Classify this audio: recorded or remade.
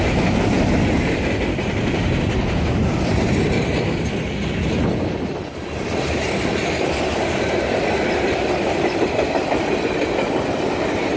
recorded